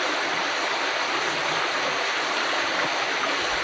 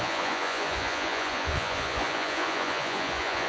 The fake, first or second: second